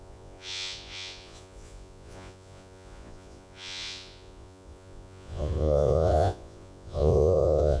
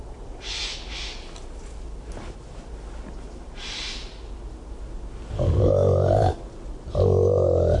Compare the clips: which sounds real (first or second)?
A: second